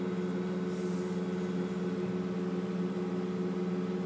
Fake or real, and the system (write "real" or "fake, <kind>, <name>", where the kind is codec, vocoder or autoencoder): real